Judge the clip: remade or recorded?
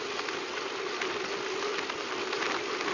recorded